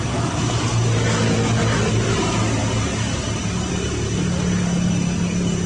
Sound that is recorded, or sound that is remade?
recorded